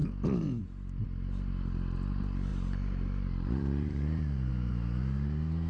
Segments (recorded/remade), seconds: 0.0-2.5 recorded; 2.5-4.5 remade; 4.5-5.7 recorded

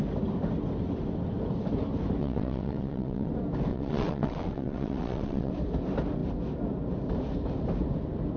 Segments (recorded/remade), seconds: 0.0-2.2 recorded; 2.2-3.3 remade; 3.3-3.7 recorded; 3.7-5.5 remade; 5.5-8.4 recorded

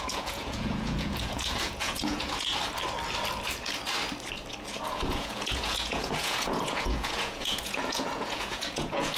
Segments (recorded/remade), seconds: 0.0-2.5 remade; 2.5-4.9 recorded; 4.9-9.2 remade